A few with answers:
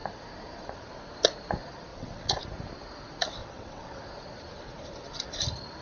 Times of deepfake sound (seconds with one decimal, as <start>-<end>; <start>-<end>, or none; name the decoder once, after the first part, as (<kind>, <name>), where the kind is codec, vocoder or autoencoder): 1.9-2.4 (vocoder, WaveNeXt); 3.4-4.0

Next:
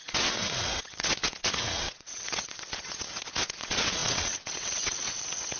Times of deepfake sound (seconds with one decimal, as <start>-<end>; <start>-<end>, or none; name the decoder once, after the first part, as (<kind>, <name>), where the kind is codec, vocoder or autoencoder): 0.0-5.6 (vocoder, WaveNeXt)

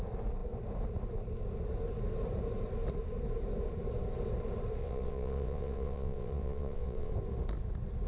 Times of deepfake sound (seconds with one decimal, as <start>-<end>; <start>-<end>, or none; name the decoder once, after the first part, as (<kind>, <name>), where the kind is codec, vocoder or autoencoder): 4.8-7.1 (vocoder, WaveNeXt)